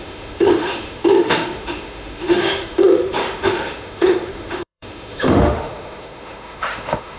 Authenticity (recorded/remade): remade